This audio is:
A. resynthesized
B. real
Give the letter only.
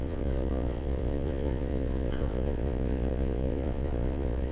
A